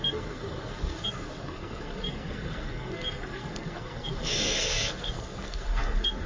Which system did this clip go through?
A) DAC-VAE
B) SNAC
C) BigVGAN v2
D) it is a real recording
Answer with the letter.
B